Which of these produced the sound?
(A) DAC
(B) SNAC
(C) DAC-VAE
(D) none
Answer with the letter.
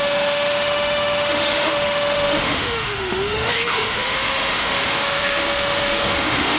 C